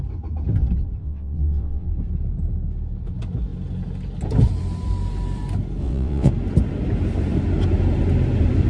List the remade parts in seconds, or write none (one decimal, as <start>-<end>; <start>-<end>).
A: 1.0-1.9; 5.8-6.3